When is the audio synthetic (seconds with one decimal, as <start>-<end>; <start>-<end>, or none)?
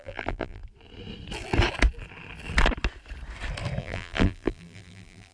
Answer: 0.0-0.6; 3.8-5.3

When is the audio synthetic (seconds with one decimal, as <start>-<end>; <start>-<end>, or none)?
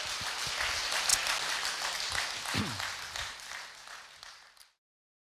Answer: none